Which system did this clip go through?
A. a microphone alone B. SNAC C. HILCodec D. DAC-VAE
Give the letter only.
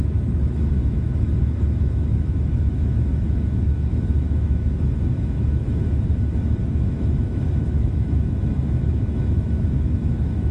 D